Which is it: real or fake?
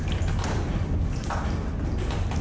real